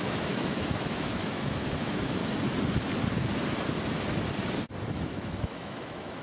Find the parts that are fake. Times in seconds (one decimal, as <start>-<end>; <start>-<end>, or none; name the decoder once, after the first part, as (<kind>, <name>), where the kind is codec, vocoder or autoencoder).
0.0-2.2 (autoencoder, DAC-VAE); 4.9-6.2